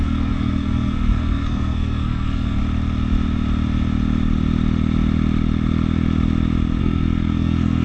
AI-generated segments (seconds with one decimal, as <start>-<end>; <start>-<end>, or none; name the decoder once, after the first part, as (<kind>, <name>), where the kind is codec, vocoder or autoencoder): 0.0-2.6 (codec, SNAC); 6.8-7.8